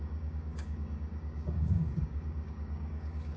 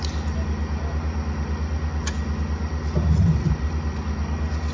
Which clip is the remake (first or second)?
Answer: first